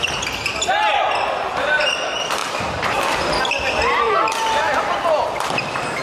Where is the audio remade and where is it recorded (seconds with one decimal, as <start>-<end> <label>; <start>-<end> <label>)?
0.0-6.0 recorded